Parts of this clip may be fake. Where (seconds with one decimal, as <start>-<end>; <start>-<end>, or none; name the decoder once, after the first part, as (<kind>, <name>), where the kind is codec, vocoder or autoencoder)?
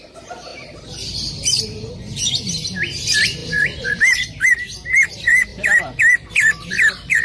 0.5-1.9 (vocoder, BigVGAN v2); 3.4-5.1; 5.5-6.7